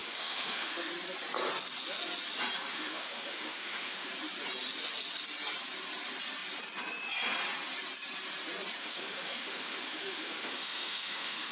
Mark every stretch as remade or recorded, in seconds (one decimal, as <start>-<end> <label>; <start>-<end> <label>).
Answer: 0.0-0.9 remade; 0.9-2.7 recorded; 2.7-4.1 remade; 4.1-8.8 recorded; 8.8-11.5 remade